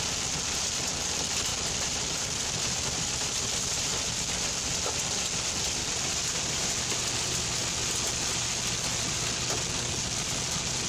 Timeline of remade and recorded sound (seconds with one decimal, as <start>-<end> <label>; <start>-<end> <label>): 0.0-1.5 recorded; 1.5-3.9 remade; 3.9-5.8 recorded; 5.8-6.7 remade; 6.7-10.9 recorded